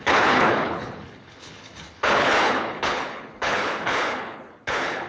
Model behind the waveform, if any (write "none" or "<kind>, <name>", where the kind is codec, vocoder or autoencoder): codec, HILCodec